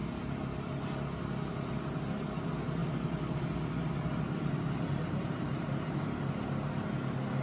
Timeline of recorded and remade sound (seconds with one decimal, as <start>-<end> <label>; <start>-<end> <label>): 0.0-2.8 recorded; 2.8-3.4 remade; 3.4-4.9 recorded; 4.9-6.7 remade; 6.7-7.4 recorded